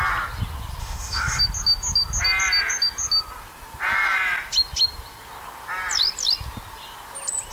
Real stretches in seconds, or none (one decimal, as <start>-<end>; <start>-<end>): 0.0-0.8; 1.4-7.5